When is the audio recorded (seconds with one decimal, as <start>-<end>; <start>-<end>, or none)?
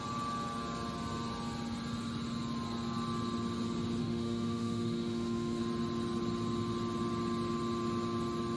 0.0-4.0; 5.6-8.6